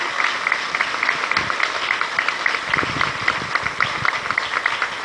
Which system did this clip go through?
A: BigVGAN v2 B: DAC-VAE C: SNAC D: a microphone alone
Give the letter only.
D